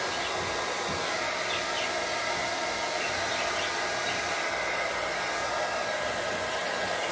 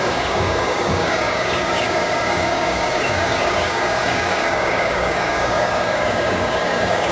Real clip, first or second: first